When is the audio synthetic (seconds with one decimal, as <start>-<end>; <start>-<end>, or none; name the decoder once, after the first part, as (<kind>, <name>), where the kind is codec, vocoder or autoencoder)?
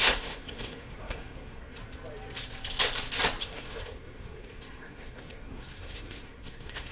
0.0-1.8 (codec, SNAC); 3.4-6.9